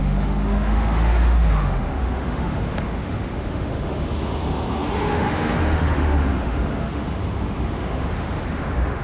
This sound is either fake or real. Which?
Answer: fake